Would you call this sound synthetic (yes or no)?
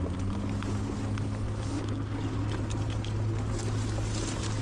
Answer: no